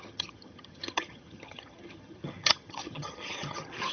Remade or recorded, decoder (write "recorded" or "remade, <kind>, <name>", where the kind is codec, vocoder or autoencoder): remade, vocoder, HiFi-GAN